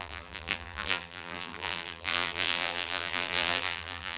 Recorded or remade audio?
remade